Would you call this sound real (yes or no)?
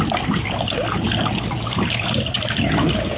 yes